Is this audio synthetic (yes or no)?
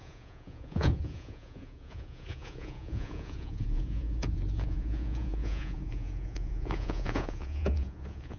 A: yes